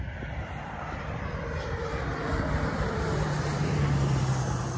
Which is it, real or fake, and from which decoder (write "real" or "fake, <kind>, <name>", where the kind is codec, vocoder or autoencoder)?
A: fake, vocoder, BigVGAN v2